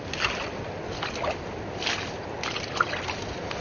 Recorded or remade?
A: recorded